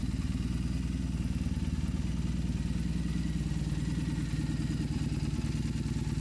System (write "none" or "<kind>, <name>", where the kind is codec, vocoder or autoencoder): none